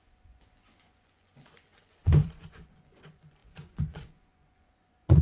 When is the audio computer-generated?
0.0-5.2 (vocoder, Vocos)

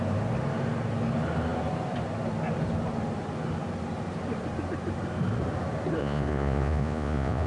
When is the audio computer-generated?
6.0-7.5 (vocoder, Vocos)

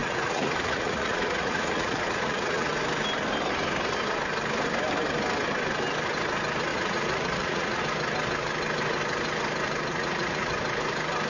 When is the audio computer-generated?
0.0-2.7 (vocoder, Vocos); 6.7-7.8; 9.9-10.5

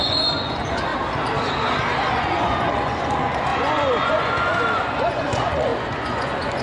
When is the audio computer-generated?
0.0-0.9 (vocoder, Vocos); 2.1-6.6